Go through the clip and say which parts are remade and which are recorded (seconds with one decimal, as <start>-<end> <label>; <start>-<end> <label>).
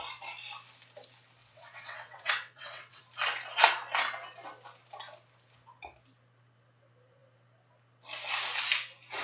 0.0-1.4 recorded; 1.4-3.0 remade; 3.0-9.2 recorded